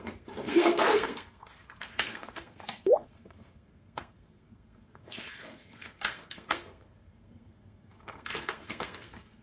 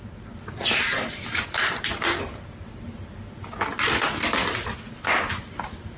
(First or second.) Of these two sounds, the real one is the second